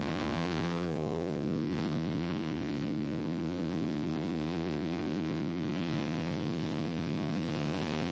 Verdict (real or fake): fake